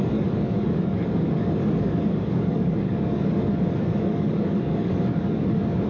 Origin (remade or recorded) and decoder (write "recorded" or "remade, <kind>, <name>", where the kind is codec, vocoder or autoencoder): remade, codec, DAC